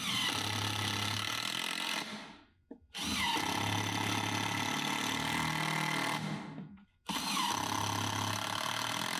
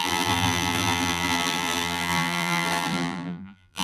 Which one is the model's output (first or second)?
second